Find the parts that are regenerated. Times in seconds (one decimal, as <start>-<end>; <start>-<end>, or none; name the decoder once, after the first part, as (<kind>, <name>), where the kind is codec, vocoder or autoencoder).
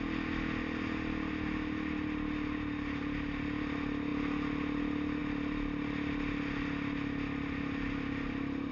none